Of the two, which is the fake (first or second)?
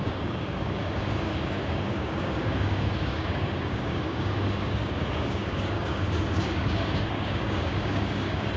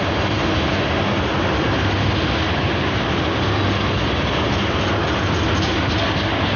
first